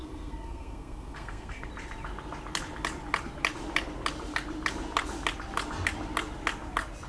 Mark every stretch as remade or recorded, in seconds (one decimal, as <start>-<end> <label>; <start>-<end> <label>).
0.0-1.7 remade; 1.7-7.1 recorded